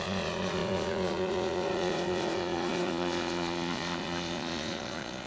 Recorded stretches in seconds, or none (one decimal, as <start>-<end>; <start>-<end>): none